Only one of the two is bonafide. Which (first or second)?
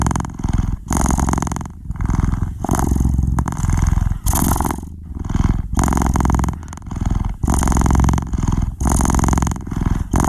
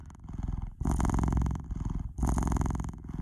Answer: first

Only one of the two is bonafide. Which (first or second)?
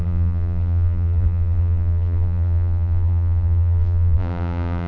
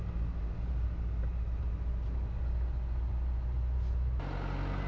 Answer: second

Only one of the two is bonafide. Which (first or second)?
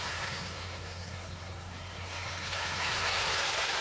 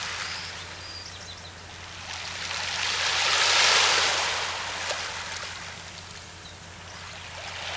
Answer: second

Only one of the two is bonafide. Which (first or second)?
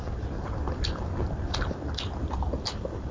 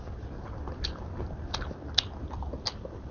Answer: second